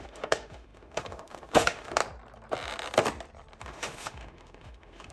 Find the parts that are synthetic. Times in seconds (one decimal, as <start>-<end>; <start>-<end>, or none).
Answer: 0.0-2.0; 3.6-5.1